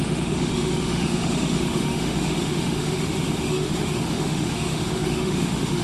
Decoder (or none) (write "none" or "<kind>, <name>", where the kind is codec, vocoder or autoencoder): autoencoder, DAC-VAE